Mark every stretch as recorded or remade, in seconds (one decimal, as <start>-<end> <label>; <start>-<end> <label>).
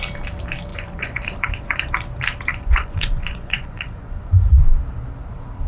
0.0-0.7 recorded; 0.7-1.9 remade; 1.9-2.5 recorded; 2.5-4.7 remade; 4.7-5.7 recorded